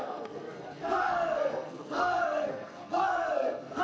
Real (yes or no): no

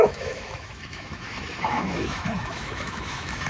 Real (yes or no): no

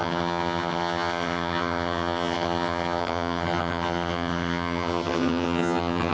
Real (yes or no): no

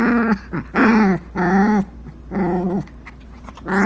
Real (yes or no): yes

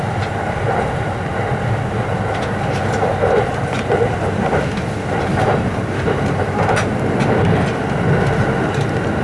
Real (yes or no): yes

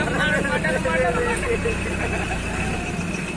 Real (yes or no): yes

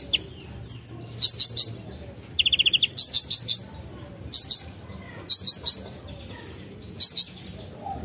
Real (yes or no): yes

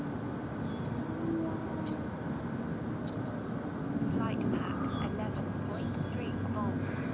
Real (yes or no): yes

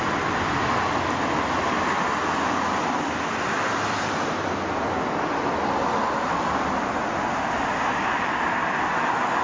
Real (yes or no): yes